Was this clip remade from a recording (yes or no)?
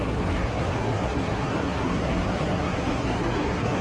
yes